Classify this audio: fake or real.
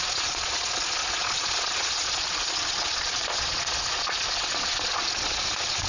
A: fake